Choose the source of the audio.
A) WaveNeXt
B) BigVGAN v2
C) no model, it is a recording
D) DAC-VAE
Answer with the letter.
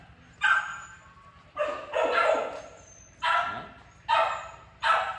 C